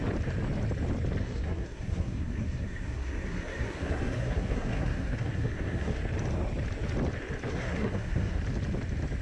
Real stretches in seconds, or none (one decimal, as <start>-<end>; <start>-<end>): 0.0-1.2; 6.0-7.5; 8.4-9.2